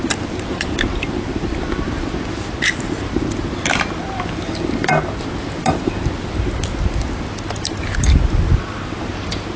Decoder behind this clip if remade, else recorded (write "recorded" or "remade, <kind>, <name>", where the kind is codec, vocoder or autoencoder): remade, vocoder, BigVGAN v2